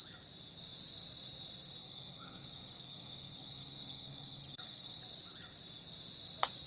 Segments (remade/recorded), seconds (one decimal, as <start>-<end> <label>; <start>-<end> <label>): 0.0-1.8 recorded; 1.8-5.0 remade; 5.0-6.7 recorded